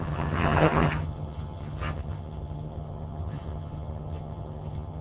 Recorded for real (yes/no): no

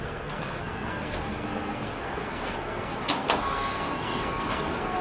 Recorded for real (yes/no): no